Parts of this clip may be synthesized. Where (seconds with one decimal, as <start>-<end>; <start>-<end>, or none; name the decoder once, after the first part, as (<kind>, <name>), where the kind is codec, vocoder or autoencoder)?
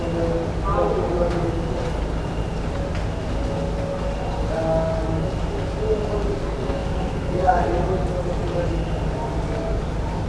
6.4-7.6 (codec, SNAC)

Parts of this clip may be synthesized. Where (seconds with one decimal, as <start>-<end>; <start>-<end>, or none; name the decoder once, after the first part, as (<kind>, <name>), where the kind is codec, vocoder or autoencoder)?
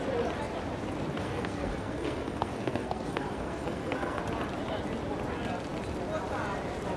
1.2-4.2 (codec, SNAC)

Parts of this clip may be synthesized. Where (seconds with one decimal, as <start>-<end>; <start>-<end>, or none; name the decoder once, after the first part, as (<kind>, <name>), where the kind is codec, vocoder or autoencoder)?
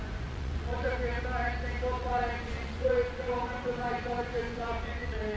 0.0-0.9 (vocoder, Vocos); 2.0-5.4